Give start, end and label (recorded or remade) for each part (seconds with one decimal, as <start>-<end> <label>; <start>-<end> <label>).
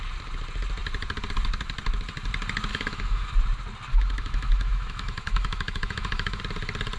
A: 0.0-2.7 recorded; 2.7-3.3 remade; 3.3-3.9 recorded; 3.9-6.4 remade; 6.4-7.0 recorded